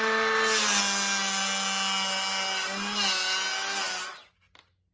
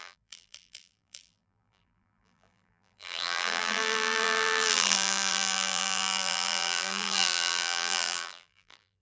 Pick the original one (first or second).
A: first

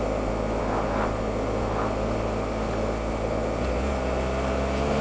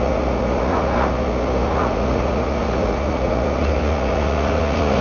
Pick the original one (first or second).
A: first